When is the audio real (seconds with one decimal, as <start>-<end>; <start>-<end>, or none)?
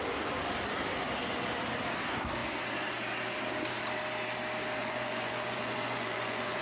0.0-4.8